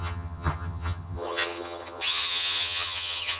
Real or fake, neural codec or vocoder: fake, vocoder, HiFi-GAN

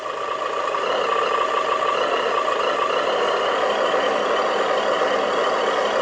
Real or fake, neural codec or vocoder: real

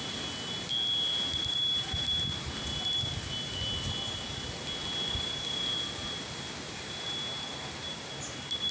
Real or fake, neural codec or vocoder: real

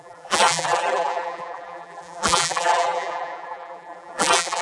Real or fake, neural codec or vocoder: fake, vocoder, BigVGAN v2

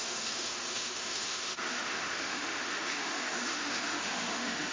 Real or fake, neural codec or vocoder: fake, autoencoder, DAC-VAE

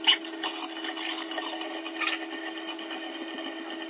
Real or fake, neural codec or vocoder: real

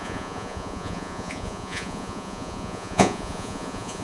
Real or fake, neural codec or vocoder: fake, vocoder, Vocos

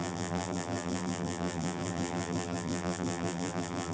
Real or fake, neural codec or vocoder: fake, vocoder, BigVGAN v2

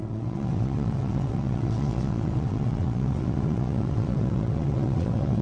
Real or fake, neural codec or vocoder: fake, vocoder, WaveNeXt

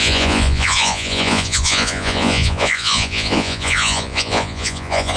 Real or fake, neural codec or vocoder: fake, vocoder, Vocos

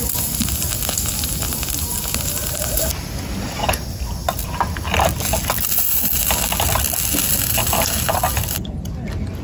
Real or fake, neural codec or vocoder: real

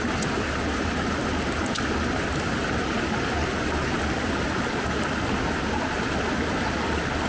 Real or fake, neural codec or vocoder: real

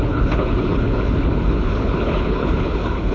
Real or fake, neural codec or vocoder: fake, codec, HILCodec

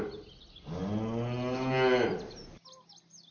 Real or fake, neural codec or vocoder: real